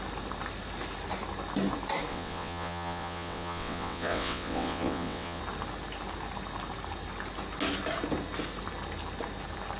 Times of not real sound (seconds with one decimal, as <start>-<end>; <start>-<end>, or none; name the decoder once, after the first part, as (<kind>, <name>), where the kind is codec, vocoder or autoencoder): 2.1-5.4 (vocoder, WaveNeXt)